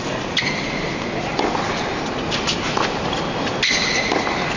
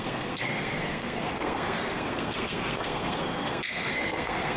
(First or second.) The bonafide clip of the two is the first